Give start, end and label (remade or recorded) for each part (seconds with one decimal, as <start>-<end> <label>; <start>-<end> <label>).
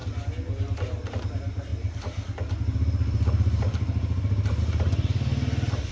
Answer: 0.0-5.9 recorded